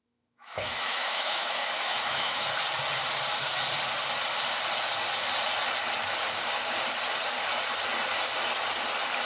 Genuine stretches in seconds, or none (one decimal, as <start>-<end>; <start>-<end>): 2.5-9.3